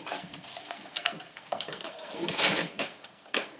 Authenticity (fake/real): fake